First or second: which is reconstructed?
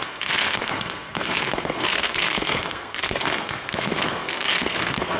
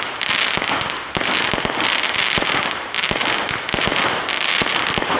first